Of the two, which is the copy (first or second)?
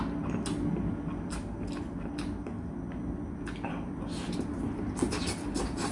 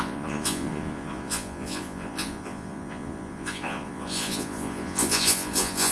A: second